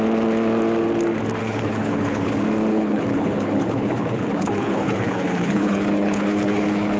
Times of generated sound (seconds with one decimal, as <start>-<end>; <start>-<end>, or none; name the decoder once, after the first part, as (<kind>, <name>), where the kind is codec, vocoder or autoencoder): 1.4-2.3 (codec, HILCodec); 2.7-7.0